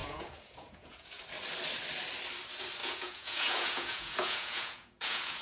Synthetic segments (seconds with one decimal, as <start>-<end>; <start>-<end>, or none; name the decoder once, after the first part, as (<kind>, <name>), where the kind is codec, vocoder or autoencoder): 0.0-1.2 (vocoder, Vocos); 2.8-5.4